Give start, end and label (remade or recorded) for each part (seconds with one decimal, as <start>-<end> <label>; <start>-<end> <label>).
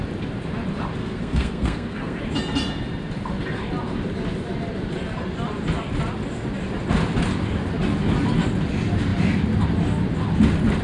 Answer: 0.0-1.0 recorded; 1.0-2.2 remade; 2.2-10.8 recorded